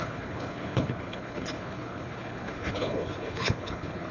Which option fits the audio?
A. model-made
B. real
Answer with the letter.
A